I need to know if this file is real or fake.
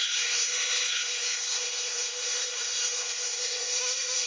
fake